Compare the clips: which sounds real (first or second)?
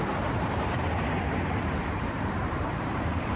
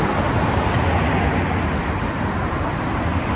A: second